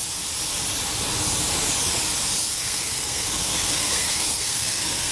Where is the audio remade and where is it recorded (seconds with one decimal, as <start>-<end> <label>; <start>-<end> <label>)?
0.0-2.5 recorded; 2.5-5.1 remade